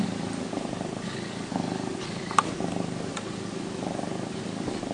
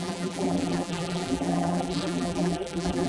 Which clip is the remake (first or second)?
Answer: second